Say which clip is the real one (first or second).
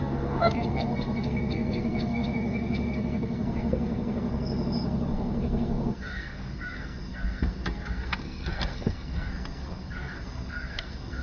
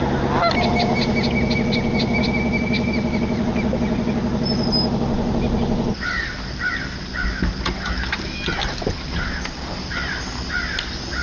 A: second